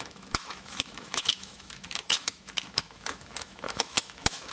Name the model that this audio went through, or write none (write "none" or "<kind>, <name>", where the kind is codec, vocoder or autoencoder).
autoencoder, DAC-VAE